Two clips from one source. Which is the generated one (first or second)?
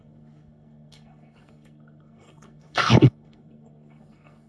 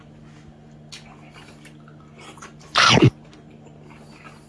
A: first